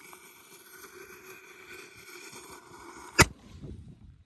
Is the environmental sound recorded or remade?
remade